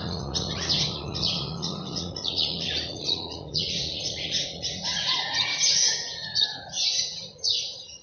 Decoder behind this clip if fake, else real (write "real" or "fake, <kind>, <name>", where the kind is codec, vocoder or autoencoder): fake, vocoder, Vocos